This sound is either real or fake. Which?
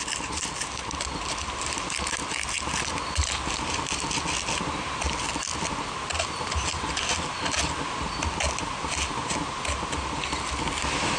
real